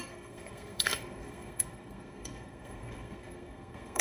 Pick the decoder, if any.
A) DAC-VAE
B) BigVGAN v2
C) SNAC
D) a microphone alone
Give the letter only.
C